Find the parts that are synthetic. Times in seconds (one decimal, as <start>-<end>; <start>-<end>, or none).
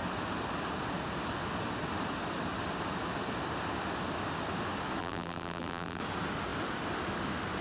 5.0-6.0